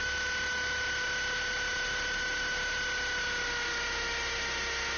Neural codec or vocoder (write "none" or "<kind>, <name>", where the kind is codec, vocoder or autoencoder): none